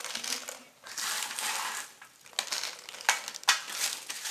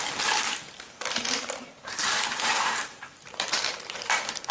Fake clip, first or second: second